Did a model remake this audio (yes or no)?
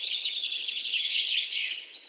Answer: yes